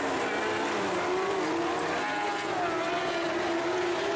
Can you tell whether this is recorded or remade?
recorded